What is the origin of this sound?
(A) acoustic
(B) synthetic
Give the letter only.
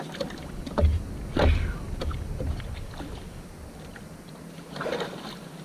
A